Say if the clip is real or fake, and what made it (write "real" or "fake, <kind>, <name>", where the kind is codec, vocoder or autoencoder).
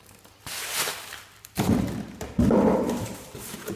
fake, vocoder, BigVGAN v2